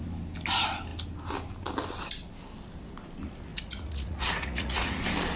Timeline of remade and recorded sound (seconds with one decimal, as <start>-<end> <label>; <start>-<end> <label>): 0.0-3.5 recorded; 3.5-5.0 remade; 5.0-5.4 recorded